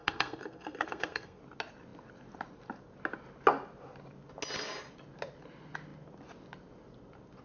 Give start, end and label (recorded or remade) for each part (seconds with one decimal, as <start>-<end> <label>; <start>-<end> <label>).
0.0-1.4 remade; 1.4-7.4 recorded

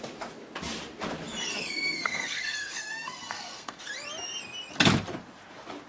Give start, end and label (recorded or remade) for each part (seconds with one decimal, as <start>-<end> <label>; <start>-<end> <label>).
0.0-1.5 recorded; 1.5-3.8 remade; 3.8-5.9 recorded

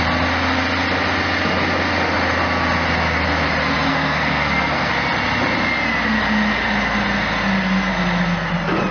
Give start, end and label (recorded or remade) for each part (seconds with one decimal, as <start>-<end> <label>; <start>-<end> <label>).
0.0-3.9 recorded; 3.9-4.9 remade; 4.9-8.9 recorded

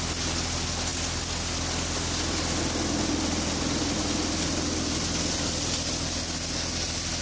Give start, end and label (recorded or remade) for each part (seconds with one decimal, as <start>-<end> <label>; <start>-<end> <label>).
0.0-7.2 recorded

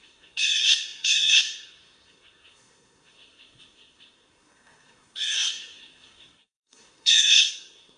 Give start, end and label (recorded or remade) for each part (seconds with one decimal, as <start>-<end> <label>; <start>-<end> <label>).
0.0-8.0 remade

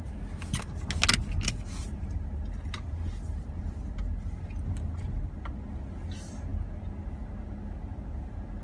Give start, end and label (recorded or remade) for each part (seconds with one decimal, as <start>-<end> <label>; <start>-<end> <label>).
0.0-8.6 recorded

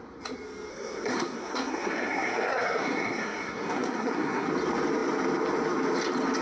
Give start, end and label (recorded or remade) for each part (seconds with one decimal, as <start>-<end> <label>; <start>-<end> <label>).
0.0-0.7 recorded; 0.7-4.5 remade; 4.5-6.4 recorded

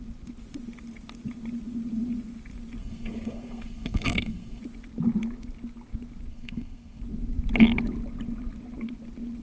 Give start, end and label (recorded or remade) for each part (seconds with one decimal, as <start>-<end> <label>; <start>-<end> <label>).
0.0-2.8 recorded; 2.8-4.6 remade; 4.6-6.3 recorded; 6.3-7.0 remade; 7.0-9.4 recorded